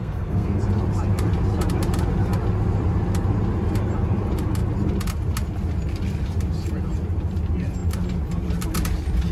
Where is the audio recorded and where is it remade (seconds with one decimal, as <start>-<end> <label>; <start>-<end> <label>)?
0.0-0.6 remade; 0.6-9.3 recorded

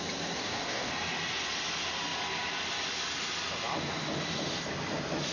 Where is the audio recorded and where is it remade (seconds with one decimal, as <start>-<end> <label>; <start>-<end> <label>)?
0.0-0.4 recorded; 0.4-0.9 remade; 0.9-5.3 recorded

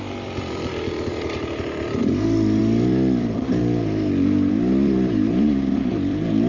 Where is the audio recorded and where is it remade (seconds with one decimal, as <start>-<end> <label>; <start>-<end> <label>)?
0.0-3.6 remade; 3.6-4.5 recorded; 4.5-6.5 remade

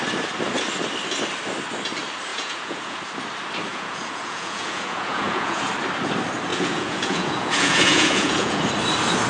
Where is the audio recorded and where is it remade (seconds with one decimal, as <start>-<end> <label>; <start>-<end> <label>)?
0.0-2.3 recorded; 2.3-3.0 remade; 3.0-3.7 recorded; 3.7-5.7 remade; 5.7-6.5 recorded; 6.5-8.6 remade; 8.6-9.3 recorded

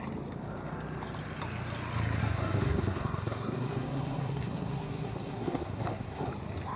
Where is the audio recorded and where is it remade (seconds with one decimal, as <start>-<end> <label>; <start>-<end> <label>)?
0.0-2.2 recorded; 2.2-6.3 remade; 6.3-6.8 recorded